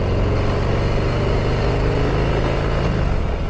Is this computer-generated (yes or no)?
no